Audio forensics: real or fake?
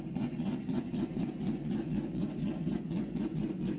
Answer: fake